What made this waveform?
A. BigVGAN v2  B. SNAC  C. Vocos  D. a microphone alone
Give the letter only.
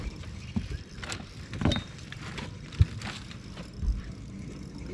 D